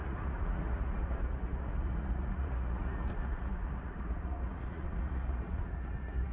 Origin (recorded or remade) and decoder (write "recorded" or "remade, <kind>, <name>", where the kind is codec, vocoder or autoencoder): remade, vocoder, Vocos